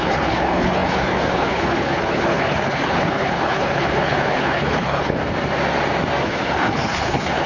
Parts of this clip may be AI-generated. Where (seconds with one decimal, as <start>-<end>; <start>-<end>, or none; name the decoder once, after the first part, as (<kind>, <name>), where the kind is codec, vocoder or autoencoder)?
0.0-5.2 (codec, HILCodec); 6.2-7.5